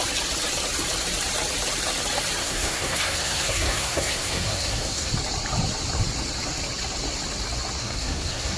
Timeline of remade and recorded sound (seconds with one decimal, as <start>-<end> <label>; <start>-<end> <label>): 0.0-2.4 recorded; 2.4-5.1 remade; 5.1-7.8 recorded; 7.8-8.6 remade